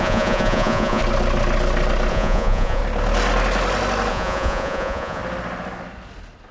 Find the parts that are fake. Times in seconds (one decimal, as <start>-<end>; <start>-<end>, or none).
0.0-1.0; 2.1-2.8; 4.1-5.2